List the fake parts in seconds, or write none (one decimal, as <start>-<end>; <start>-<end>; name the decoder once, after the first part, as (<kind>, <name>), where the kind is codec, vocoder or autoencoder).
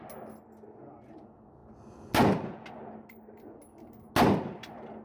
none